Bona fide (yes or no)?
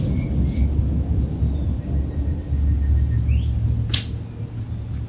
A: yes